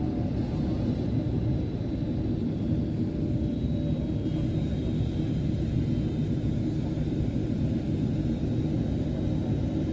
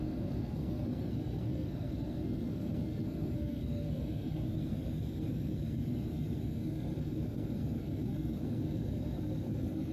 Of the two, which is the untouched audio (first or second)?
first